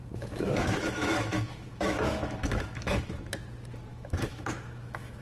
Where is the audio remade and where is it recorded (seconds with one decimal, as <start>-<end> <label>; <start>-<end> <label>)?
0.0-3.1 remade; 3.1-3.9 recorded; 3.9-5.2 remade